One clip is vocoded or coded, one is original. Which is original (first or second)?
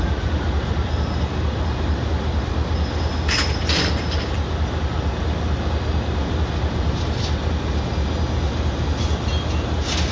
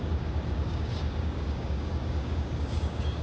first